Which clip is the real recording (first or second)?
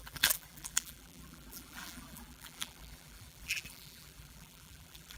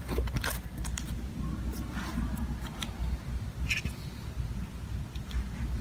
second